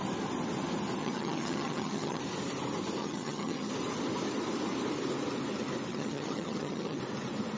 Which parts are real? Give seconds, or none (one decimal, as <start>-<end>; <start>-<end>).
0.0-1.0; 2.2-3.0; 3.7-5.9; 7.0-7.6